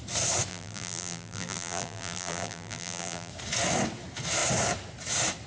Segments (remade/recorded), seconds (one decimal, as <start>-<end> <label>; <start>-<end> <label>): 0.0-0.5 recorded; 0.5-3.3 remade; 3.3-5.5 recorded